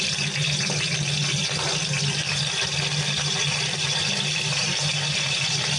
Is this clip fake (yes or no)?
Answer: no